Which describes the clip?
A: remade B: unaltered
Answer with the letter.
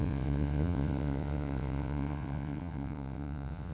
A